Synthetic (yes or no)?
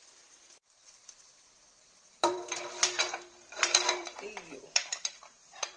yes